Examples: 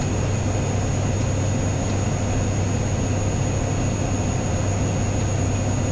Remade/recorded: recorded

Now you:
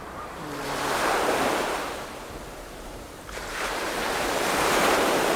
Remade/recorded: remade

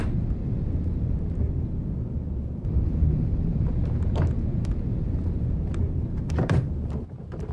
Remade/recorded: remade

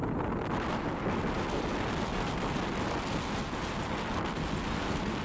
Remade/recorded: recorded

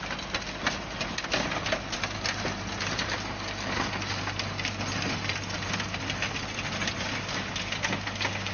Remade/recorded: recorded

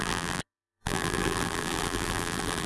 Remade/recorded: remade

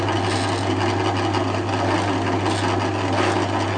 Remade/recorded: recorded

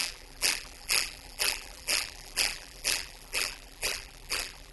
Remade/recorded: remade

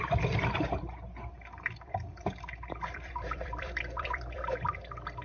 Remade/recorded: remade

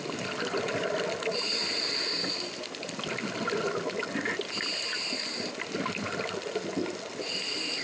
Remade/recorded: recorded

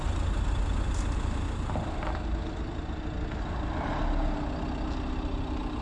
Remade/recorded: recorded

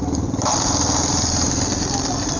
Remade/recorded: remade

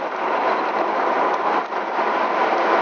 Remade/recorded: remade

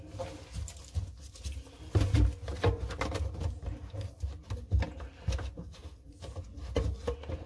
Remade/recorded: recorded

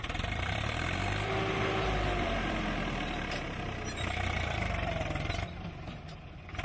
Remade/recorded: remade